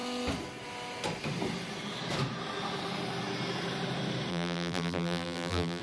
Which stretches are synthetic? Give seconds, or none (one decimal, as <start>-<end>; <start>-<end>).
4.3-5.8

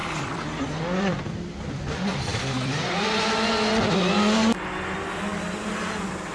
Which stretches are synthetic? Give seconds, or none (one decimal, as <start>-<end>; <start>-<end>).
0.0-1.8; 2.3-3.1

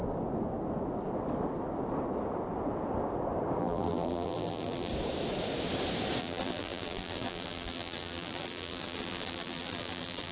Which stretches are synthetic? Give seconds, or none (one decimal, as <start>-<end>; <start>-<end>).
3.6-4.9; 6.2-10.3

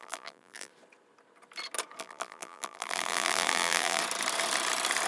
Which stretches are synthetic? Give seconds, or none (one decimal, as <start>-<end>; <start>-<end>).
0.0-0.7; 2.0-4.0